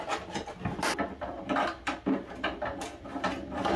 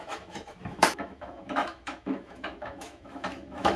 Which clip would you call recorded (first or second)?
first